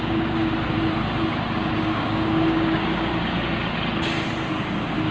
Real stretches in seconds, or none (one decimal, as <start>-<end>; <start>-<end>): 0.4-1.8; 3.1-4.5